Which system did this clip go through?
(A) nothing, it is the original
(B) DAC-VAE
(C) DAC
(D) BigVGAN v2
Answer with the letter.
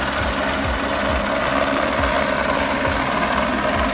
A